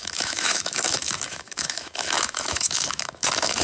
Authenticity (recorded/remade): remade